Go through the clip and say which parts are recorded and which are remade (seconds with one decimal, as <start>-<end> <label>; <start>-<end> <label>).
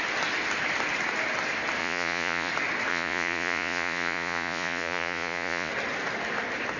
0.0-1.8 recorded; 1.8-2.5 remade; 2.5-2.9 recorded; 2.9-5.7 remade; 5.7-6.8 recorded